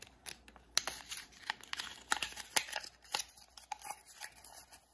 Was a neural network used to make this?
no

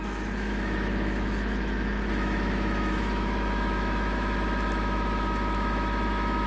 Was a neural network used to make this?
yes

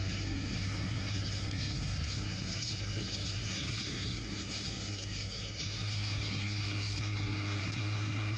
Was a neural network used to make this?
yes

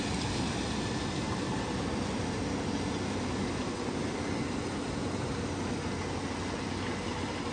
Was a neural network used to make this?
no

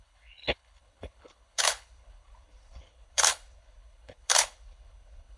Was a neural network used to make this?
yes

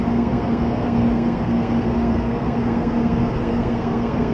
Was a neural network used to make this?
yes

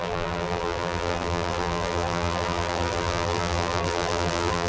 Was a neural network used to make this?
yes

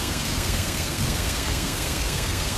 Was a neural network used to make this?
yes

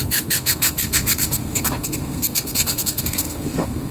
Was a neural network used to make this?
yes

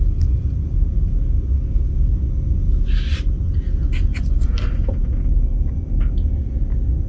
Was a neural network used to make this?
no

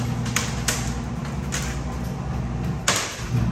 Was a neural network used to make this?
no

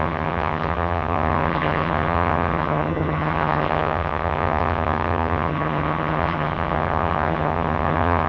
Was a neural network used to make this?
yes